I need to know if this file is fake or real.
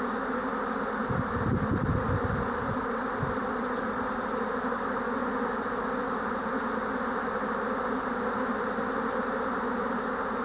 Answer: real